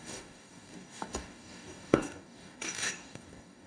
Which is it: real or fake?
fake